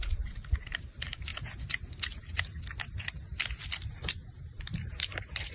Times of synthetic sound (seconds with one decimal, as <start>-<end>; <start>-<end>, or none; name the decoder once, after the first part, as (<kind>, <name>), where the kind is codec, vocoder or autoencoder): 0.0-1.3 (vocoder, BigVGAN v2); 4.4-5.5